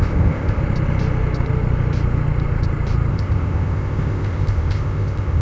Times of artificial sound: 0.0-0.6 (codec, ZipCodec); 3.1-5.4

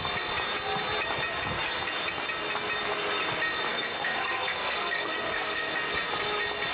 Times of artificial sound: 3.7-5.7 (codec, SNAC)

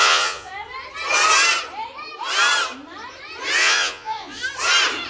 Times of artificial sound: 0.0-0.5 (vocoder, Vocos); 3.6-4.4

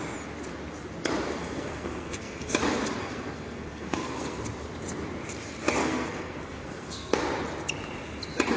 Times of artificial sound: 1.4-2.5 (codec, SNAC); 3.0-4.4; 5.8-7.2

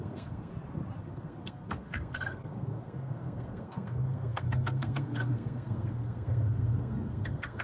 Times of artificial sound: 0.0-0.5 (codec, SNAC); 1.0-7.6